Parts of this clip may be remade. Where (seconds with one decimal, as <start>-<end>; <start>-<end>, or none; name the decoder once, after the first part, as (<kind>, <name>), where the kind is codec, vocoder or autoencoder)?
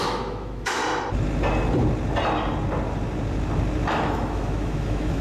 0.0-0.8 (autoencoder, DAC-VAE); 3.9-5.2